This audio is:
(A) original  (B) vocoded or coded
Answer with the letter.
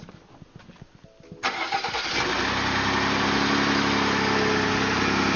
A